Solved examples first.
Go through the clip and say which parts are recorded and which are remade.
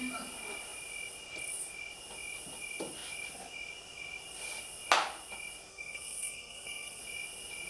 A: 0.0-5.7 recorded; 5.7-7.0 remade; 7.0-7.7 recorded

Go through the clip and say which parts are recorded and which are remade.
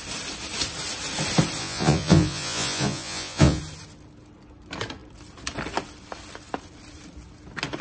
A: 0.0-1.6 recorded; 1.6-3.6 remade; 3.6-7.8 recorded